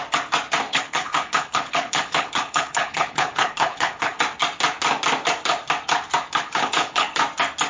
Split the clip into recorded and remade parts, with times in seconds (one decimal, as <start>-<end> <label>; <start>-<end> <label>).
0.0-0.7 recorded; 0.7-4.2 remade; 4.2-6.2 recorded; 6.2-7.2 remade; 7.2-7.7 recorded